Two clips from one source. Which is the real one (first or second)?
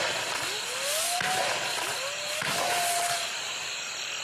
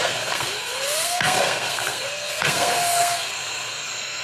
first